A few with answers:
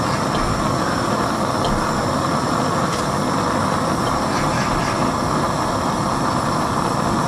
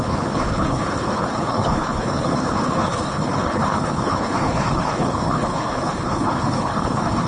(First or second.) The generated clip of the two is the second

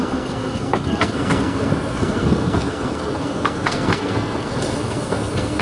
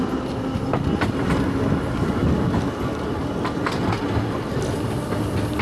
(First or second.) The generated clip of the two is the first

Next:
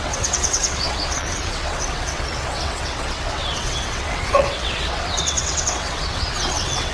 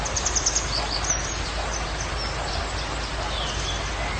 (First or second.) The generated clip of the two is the first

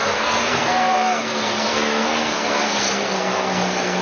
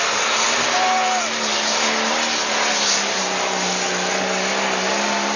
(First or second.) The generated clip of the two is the first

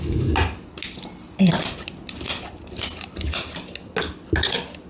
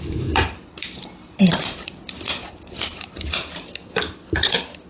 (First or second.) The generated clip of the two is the second